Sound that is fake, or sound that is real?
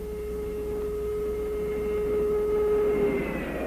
real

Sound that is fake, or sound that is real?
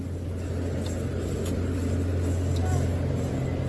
real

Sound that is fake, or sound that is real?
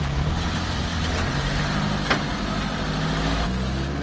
real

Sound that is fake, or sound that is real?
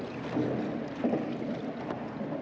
real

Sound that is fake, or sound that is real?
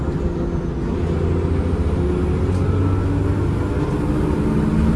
real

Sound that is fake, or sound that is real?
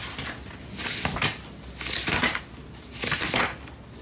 real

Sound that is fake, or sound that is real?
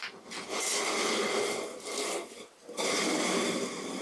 real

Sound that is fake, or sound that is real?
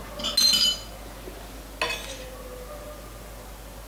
real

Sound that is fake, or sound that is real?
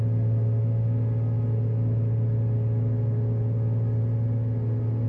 real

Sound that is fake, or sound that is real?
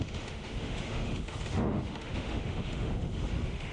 fake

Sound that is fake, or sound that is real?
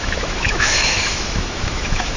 fake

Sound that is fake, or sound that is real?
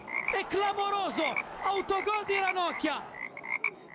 fake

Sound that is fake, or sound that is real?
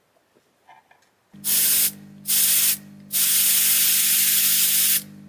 real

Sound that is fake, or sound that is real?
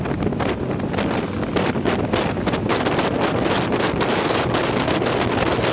real